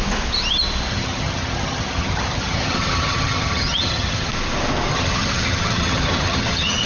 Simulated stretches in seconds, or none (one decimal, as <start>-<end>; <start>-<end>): 0.9-4.3; 4.9-6.9